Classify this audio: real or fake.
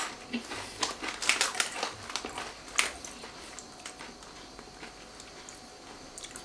real